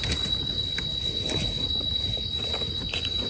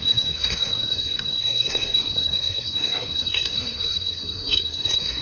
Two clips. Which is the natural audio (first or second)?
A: first